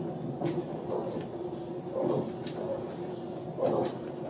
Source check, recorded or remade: recorded